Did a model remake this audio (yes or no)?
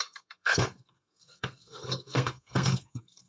yes